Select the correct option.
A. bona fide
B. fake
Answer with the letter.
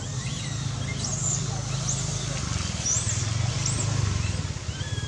A